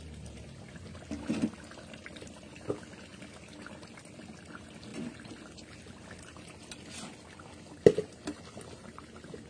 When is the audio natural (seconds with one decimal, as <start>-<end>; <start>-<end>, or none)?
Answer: 0.0-9.5